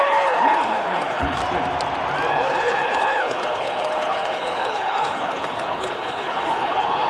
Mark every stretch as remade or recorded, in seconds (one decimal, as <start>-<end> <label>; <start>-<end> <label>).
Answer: 0.0-1.4 remade; 1.4-2.3 recorded; 2.3-7.1 remade